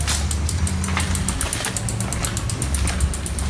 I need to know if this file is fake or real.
real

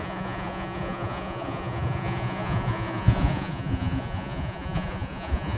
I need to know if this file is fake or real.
fake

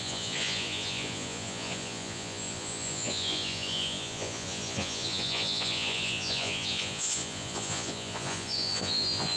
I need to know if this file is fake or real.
fake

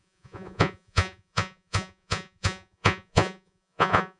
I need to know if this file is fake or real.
fake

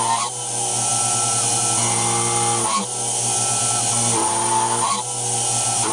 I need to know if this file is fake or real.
real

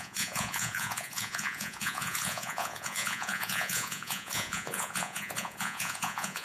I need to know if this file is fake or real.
fake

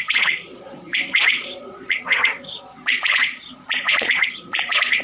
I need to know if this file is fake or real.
fake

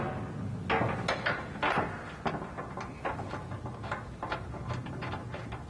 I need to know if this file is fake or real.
real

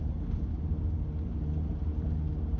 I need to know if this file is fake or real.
real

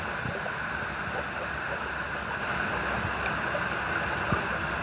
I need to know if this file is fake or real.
real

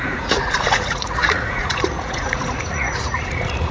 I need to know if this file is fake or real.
fake